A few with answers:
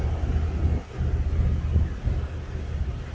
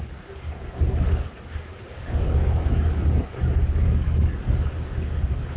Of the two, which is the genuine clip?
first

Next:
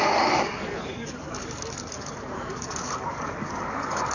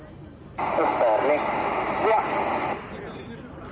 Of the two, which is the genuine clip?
second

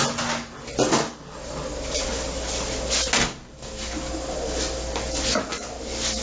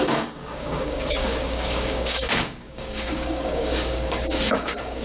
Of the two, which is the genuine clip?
first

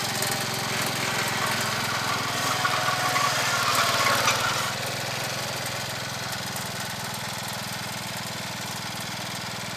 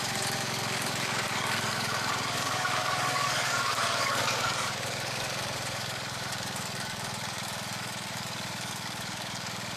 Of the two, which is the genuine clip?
first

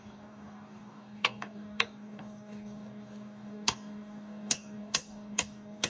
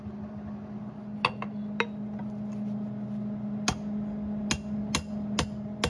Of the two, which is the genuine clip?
second